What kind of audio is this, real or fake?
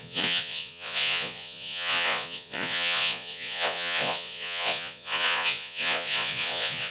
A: fake